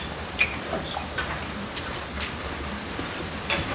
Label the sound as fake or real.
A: fake